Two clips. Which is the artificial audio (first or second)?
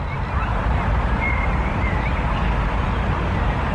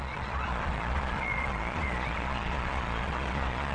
second